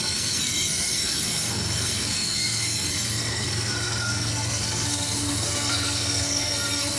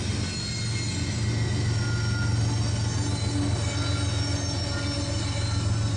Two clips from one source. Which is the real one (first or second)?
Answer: second